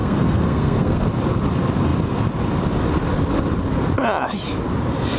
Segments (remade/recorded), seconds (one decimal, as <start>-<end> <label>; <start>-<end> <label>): 0.0-1.1 remade; 1.1-5.2 recorded